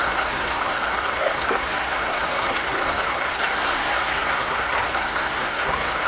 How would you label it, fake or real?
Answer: fake